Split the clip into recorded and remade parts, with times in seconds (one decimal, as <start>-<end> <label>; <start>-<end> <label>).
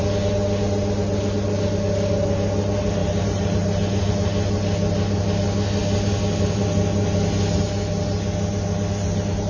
0.0-3.0 recorded; 3.0-4.1 remade; 4.1-9.5 recorded